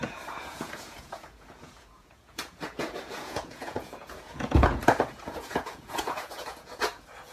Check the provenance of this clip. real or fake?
fake